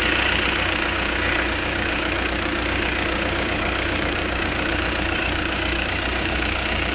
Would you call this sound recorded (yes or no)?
no